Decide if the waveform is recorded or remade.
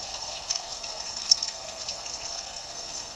remade